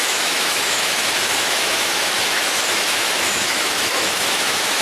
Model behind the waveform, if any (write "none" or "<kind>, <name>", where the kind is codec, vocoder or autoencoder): autoencoder, DAC-VAE